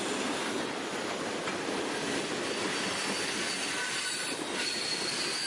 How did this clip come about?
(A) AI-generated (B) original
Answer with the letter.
B